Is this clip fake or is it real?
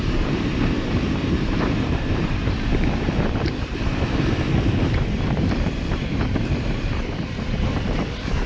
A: fake